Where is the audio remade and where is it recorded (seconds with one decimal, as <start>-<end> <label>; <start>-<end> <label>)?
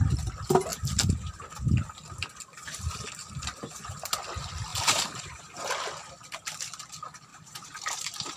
0.0-4.7 recorded; 4.7-5.7 remade; 5.7-7.3 recorded; 7.3-8.4 remade